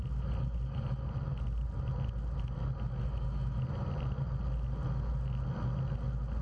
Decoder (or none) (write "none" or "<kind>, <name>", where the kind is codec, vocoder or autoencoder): none